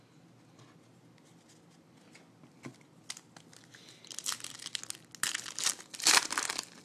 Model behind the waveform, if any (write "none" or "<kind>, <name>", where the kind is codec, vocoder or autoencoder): none